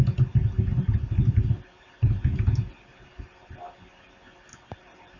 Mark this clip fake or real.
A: real